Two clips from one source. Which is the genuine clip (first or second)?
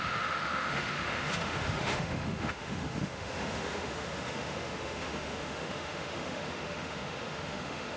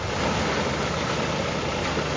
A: second